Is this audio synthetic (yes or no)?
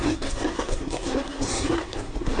yes